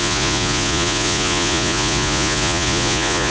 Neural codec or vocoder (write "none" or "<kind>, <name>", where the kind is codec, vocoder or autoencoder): vocoder, Vocos